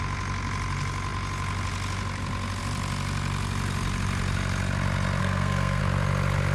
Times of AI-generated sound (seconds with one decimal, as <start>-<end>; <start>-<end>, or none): 5.2-5.8

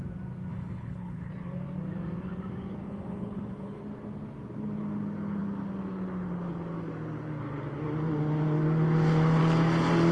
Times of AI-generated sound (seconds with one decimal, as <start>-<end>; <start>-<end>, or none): 0.5-1.3; 2.8-3.8

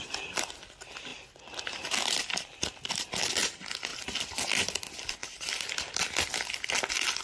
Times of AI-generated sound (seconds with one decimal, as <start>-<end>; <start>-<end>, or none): 5.2-6.5

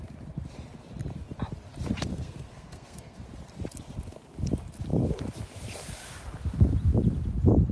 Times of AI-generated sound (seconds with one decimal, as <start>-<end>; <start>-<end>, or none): 2.1-3.2

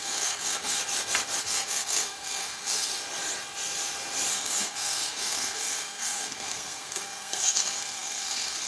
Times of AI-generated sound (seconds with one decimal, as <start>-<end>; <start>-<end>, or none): 0.0-0.8; 1.4-2.9; 4.3-8.7

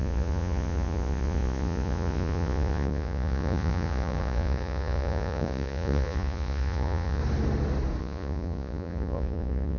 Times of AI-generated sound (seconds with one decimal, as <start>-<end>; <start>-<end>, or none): 0.0-7.2; 8.0-9.8

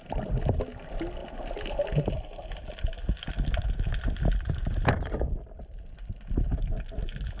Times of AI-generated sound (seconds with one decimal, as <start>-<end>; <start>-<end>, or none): 1.2-5.6

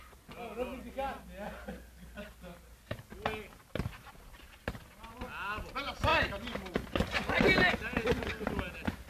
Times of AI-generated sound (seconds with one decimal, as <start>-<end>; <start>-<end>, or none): none